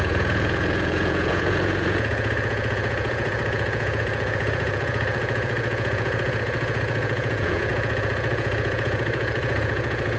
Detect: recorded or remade remade